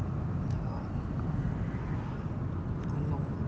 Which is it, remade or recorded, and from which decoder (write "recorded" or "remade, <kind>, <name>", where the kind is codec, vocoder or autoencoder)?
recorded